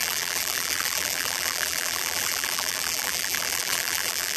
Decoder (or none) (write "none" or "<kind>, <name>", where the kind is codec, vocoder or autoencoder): vocoder, BigVGAN v2